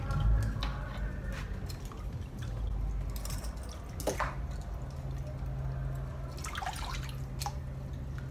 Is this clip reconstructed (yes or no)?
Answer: no